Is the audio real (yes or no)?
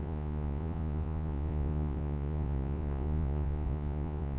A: no